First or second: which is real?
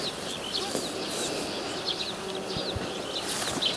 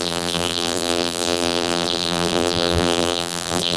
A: first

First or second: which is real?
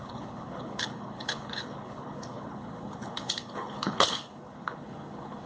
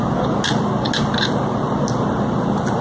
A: second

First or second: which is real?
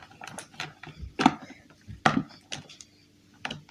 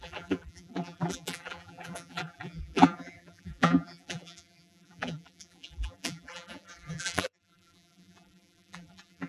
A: first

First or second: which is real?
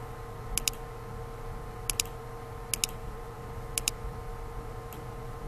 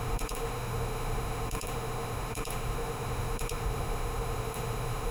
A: first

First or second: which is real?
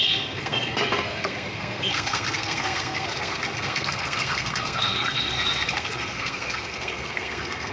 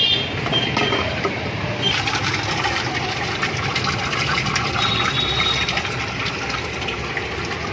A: second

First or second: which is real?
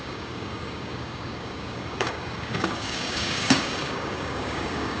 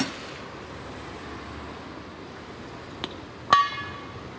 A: second